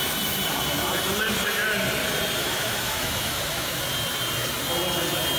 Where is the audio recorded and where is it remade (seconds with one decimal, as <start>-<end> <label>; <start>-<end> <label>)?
0.0-2.4 recorded; 2.4-3.8 remade; 3.8-5.4 recorded